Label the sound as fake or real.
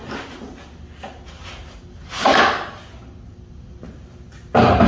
real